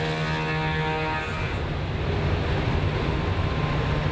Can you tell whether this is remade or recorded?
recorded